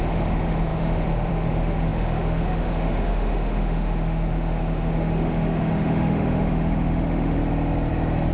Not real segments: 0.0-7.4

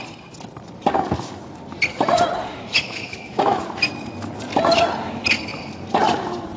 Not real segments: 2.5-3.6